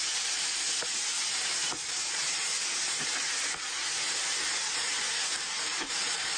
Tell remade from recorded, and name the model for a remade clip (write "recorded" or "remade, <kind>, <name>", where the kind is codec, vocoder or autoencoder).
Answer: recorded